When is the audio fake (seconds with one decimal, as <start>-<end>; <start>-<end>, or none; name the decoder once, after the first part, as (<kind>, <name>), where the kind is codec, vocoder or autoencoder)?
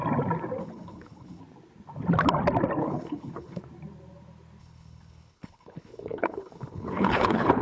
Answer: 0.6-1.4 (codec, HILCodec); 2.8-3.6; 4.6-7.6